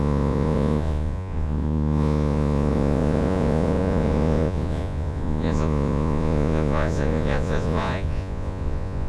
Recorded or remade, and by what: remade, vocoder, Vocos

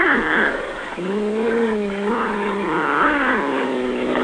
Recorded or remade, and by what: remade, codec, DAC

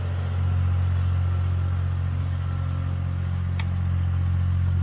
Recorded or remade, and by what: recorded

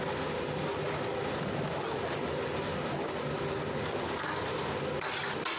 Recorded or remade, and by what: recorded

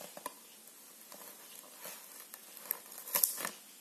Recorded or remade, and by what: recorded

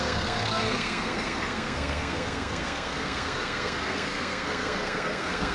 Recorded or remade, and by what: remade, codec, SNAC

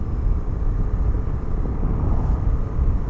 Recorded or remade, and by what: recorded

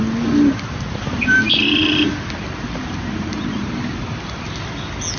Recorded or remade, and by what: recorded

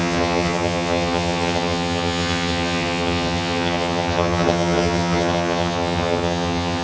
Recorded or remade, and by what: remade, vocoder, HiFi-GAN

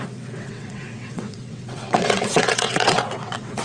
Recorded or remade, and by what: remade, vocoder, WaveNeXt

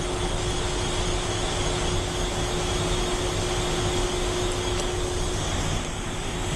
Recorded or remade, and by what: recorded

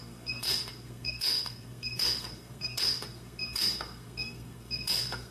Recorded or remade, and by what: remade, codec, SNAC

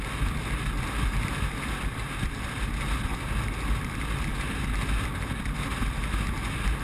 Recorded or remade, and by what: recorded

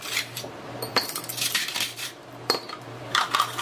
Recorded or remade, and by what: remade, vocoder, BigVGAN v2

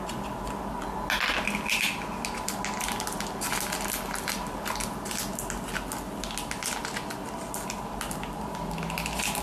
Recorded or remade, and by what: recorded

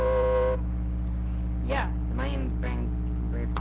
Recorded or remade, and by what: recorded